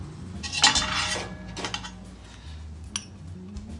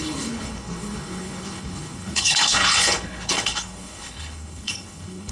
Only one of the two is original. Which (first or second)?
first